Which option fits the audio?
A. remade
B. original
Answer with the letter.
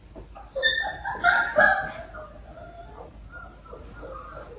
B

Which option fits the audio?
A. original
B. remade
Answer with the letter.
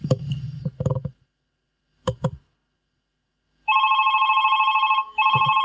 B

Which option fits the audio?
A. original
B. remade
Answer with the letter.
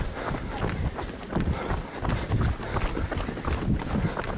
A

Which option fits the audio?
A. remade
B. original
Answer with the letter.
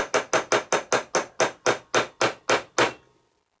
B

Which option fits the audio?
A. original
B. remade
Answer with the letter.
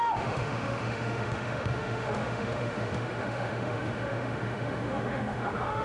B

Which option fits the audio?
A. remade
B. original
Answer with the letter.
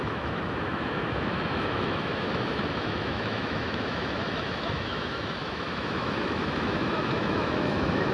A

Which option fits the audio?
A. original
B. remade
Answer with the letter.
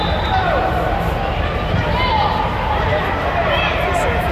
A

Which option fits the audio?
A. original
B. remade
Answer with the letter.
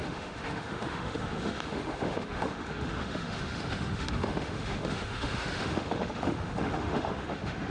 B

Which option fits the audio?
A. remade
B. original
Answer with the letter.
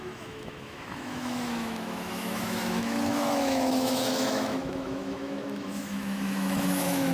A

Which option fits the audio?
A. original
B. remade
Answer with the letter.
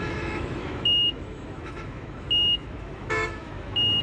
B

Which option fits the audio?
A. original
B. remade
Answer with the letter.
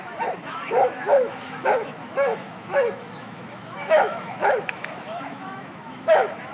B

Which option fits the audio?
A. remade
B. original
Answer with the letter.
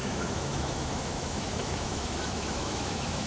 A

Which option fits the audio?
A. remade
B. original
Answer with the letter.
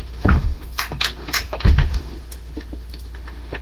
A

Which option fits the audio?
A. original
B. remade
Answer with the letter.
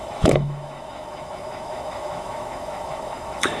B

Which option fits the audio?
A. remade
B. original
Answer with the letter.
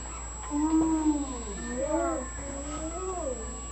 B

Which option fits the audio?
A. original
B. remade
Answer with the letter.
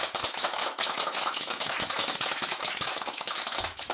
B